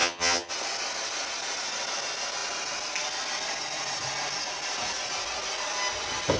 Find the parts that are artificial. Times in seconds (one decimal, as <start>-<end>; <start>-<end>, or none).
0.0-0.5